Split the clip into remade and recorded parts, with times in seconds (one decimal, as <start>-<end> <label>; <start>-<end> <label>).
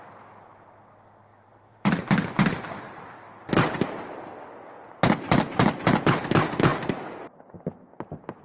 0.0-1.3 recorded; 1.3-2.0 remade; 2.0-8.4 recorded